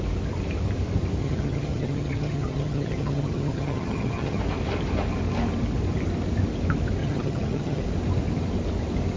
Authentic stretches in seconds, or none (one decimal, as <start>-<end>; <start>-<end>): 0.0-1.2; 4.4-7.0; 7.8-9.2